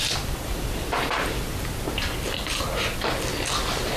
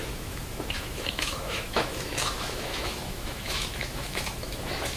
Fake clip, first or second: second